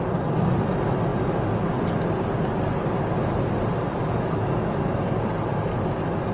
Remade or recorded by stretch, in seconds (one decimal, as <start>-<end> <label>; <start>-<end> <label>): 0.0-6.3 recorded